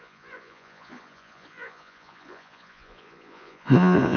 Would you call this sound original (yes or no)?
no